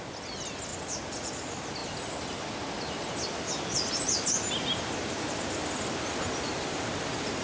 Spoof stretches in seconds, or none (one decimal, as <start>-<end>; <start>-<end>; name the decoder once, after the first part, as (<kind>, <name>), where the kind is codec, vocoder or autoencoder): 0.7-1.3 (vocoder, Vocos)